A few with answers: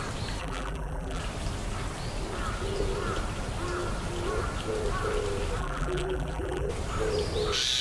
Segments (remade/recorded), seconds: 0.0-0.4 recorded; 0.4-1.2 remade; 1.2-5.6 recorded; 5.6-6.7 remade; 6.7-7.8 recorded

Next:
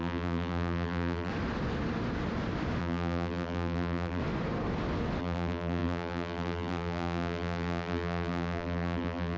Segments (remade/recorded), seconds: 0.0-1.3 remade; 1.3-2.8 recorded; 2.8-4.2 remade; 4.2-5.2 recorded; 5.2-9.4 remade